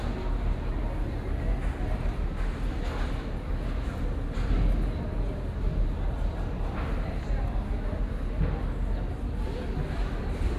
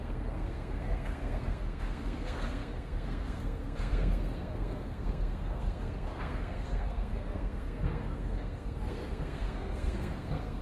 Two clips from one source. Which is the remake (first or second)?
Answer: second